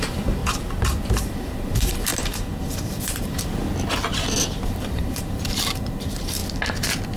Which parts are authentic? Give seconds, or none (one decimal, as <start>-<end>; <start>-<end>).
0.4-1.2; 3.6-4.7; 6.4-7.2

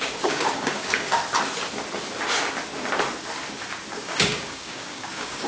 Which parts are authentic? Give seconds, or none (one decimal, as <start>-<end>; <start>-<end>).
1.2-3.9

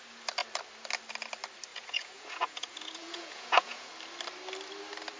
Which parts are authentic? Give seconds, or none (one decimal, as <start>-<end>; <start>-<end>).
0.0-1.7; 3.9-5.2

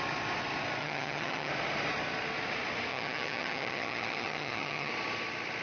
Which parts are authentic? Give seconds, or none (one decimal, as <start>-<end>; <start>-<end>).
0.0-0.8; 1.5-2.9; 4.9-5.6

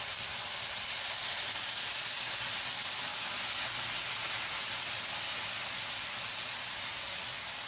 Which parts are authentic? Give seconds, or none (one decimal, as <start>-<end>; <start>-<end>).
0.0-7.7